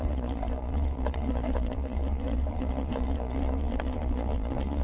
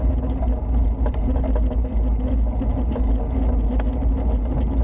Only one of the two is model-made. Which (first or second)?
first